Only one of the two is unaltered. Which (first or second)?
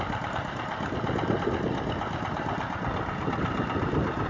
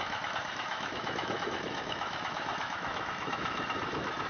first